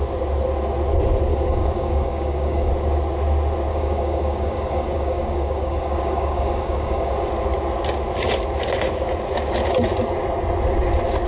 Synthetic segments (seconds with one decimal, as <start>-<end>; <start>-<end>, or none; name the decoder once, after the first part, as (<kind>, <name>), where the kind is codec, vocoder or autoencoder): 1.3-2.7 (codec, DAC); 3.7-7.3